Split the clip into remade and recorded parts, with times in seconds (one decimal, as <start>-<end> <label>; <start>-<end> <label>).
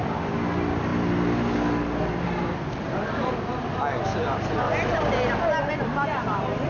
0.0-6.7 recorded